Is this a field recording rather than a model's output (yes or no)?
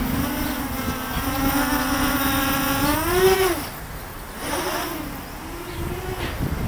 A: yes